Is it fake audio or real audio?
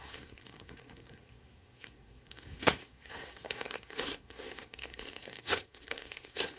fake